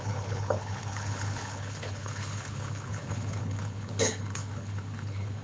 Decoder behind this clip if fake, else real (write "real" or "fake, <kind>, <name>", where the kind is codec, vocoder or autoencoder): fake, codec, HILCodec